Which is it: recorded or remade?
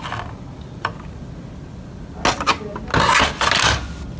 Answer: recorded